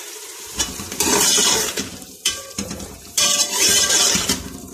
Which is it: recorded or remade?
remade